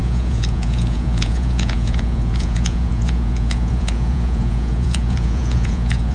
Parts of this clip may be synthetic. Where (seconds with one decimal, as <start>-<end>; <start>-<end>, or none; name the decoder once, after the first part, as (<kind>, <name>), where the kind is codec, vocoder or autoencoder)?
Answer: 0.0-6.1 (vocoder, Vocos)

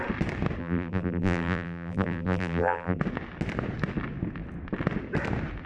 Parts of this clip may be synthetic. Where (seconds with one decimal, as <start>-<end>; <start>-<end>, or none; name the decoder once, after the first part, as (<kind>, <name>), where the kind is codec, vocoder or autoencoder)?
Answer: 0.6-3.0 (vocoder, BigVGAN v2)

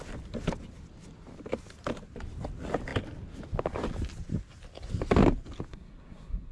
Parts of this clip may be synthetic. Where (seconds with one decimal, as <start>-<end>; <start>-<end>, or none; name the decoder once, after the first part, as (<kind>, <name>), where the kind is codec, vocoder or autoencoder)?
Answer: 5.7-6.5 (codec, SNAC)

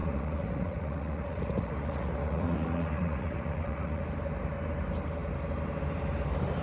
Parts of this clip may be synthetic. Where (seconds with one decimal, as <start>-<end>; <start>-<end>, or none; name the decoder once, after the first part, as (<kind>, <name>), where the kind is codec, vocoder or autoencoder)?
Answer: 0.0-4.0 (vocoder, Vocos)

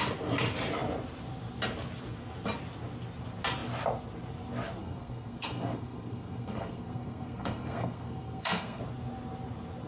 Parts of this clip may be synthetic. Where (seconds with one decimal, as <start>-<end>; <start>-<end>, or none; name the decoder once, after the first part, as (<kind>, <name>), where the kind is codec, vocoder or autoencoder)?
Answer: 4.8-8.8 (codec, SNAC)

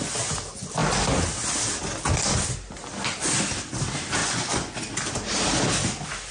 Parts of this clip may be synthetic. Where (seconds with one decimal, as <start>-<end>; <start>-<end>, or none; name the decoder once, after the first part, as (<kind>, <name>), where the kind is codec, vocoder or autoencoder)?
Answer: 4.2-4.8 (vocoder, Vocos)

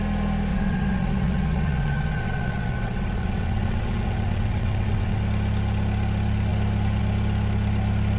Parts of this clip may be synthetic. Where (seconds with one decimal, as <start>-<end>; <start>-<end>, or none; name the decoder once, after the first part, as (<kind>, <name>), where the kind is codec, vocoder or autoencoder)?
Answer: 0.5-5.2 (vocoder, WaveNeXt)

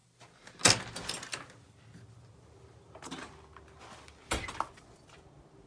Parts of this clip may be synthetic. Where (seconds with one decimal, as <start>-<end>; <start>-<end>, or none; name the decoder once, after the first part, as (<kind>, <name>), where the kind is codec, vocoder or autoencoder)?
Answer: none